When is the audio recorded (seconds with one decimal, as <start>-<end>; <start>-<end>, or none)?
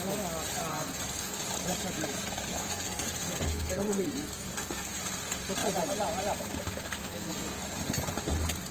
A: 0.0-0.7; 1.4-2.5; 5.0-7.0; 7.6-8.7